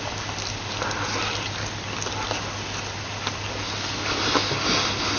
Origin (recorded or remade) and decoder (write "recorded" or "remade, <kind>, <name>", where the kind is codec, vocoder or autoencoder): recorded